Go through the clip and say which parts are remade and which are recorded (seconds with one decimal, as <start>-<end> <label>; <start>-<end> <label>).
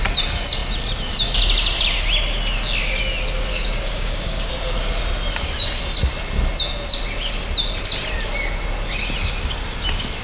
0.0-3.5 recorded; 3.5-4.5 remade; 4.5-10.2 recorded